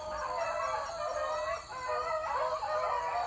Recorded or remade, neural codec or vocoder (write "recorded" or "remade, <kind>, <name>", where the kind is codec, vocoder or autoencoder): recorded